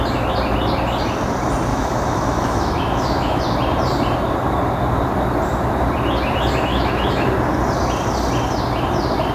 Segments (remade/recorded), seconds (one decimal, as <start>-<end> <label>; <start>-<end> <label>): 0.0-1.7 recorded; 1.7-3.4 remade; 3.4-6.7 recorded; 6.7-7.3 remade; 7.3-9.3 recorded